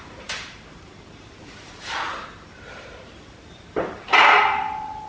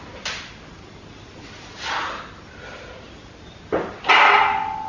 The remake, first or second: first